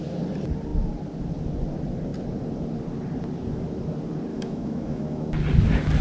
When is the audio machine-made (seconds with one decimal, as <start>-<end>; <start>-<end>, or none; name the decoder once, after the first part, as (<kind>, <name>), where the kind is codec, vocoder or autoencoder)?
4.3-5.3 (autoencoder, DAC-VAE)